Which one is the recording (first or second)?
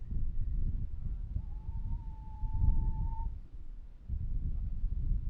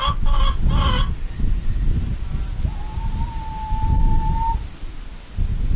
second